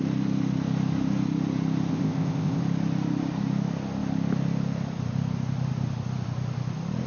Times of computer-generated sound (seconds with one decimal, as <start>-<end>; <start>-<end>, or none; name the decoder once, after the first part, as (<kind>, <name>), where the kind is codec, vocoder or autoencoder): 1.9-2.6 (codec, ZipCodec)